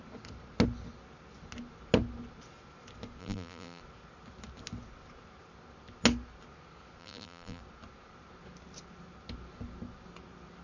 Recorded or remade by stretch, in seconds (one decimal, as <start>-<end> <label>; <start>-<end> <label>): 0.0-3.2 recorded; 3.2-3.8 remade; 3.8-7.0 recorded; 7.0-7.6 remade; 7.6-10.6 recorded